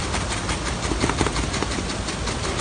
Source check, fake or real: real